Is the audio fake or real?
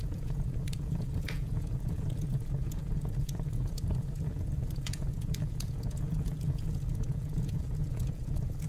fake